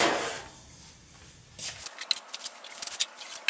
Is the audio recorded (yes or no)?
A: yes